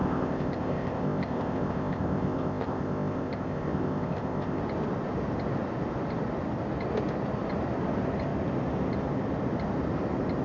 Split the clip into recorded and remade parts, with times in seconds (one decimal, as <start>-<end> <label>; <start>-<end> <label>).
0.0-4.6 remade; 4.6-10.4 recorded